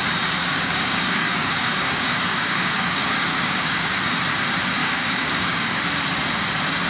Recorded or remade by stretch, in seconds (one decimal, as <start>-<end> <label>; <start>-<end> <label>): 0.0-0.4 recorded; 0.4-4.2 remade; 4.2-4.8 recorded; 4.8-5.8 remade; 5.8-6.9 recorded

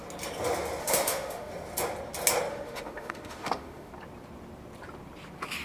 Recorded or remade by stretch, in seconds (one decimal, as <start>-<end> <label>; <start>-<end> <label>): 0.0-0.8 recorded; 0.8-1.5 remade; 1.5-2.5 recorded; 2.5-3.9 remade; 3.9-5.6 recorded

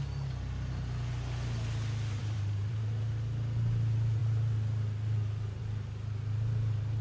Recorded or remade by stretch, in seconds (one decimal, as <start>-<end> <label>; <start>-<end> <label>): 0.0-2.2 recorded; 2.2-3.1 remade; 3.1-7.0 recorded

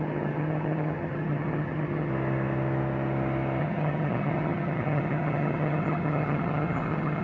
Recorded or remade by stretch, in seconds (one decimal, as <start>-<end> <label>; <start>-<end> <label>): 0.0-2.1 remade; 2.1-3.6 recorded; 3.6-7.2 remade

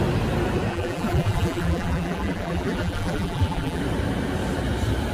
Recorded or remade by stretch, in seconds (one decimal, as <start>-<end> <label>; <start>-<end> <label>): 0.0-0.7 recorded; 0.7-3.8 remade; 3.8-5.1 recorded

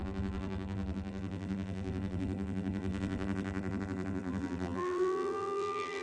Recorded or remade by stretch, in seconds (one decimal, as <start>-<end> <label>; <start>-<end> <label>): 0.0-6.0 remade

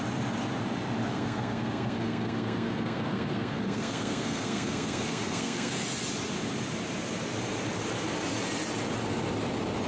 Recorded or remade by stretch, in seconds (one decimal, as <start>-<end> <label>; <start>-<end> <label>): 0.0-1.1 recorded; 1.1-5.7 remade; 5.7-9.9 recorded

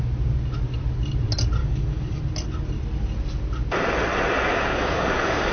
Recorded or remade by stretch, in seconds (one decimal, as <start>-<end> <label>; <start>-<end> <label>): 0.0-1.6 recorded; 1.6-2.2 remade; 2.2-4.5 recorded; 4.5-5.5 remade